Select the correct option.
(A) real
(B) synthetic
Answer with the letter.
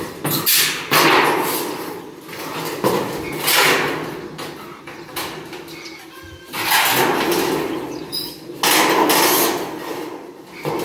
A